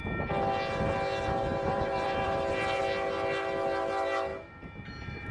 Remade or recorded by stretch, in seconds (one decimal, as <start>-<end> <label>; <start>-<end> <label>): 0.0-1.5 recorded; 1.5-2.8 remade; 2.8-4.3 recorded; 4.3-5.3 remade